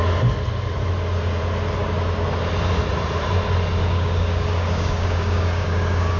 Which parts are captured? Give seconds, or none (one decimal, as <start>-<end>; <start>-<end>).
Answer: 0.0-3.8